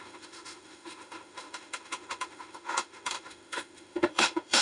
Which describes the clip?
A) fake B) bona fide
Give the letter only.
A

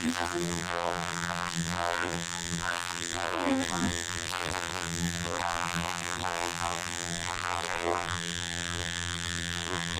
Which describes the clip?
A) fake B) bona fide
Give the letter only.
A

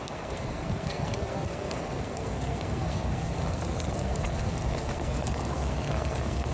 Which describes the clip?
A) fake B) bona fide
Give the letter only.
A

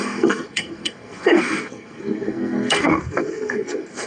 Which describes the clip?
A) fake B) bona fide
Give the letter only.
A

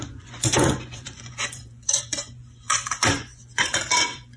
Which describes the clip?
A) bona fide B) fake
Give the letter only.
B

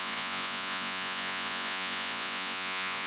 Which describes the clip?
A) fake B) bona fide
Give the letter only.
A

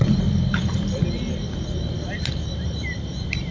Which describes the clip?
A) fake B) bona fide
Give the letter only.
B